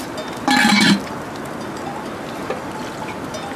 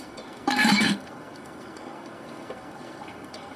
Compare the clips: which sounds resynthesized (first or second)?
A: second